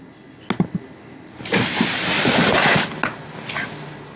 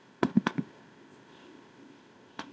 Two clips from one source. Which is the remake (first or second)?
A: second